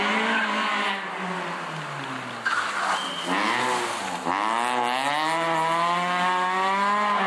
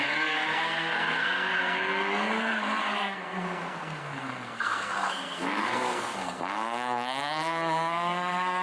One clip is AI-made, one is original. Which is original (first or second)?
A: first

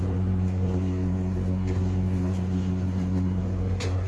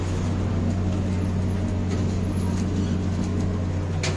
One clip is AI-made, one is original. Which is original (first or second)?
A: second